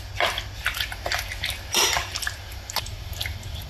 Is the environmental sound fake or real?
real